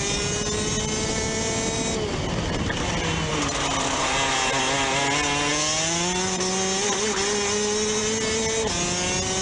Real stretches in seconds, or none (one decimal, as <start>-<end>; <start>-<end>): 0.0-9.4

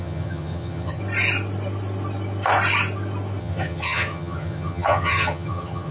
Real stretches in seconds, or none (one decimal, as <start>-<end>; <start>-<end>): 1.0-3.4

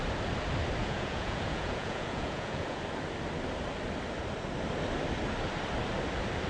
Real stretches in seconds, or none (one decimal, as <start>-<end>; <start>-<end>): 0.0-0.8; 2.8-6.5

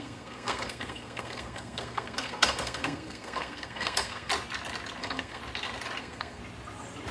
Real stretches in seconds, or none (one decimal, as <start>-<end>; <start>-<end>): 4.3-5.0; 5.4-6.0; 6.4-7.1